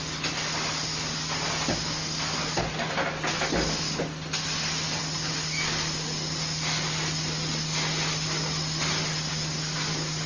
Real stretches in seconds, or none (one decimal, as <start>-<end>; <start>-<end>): 0.0-10.3